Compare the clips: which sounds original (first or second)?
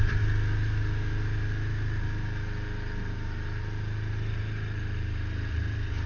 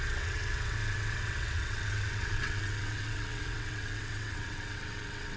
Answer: first